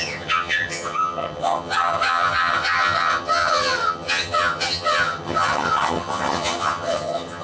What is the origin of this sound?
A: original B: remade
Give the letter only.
B